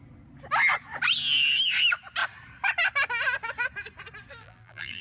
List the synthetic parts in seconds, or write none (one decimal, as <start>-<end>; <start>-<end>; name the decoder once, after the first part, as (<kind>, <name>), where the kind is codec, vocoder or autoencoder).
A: 4.4-5.0 (vocoder, BigVGAN v2)